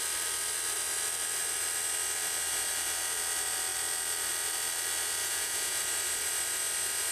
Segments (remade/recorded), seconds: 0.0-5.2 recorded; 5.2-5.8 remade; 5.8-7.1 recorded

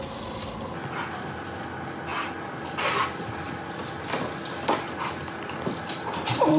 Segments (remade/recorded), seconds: 0.0-6.6 recorded